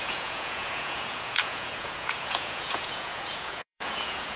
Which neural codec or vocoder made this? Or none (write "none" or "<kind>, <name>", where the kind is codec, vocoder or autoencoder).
vocoder, Vocos